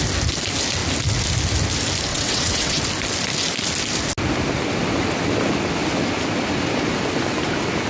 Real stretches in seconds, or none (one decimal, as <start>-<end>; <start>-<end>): 0.0-2.1; 2.8-7.9